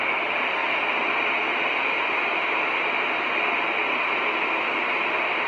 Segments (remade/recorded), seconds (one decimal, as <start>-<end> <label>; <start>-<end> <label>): 0.0-5.5 recorded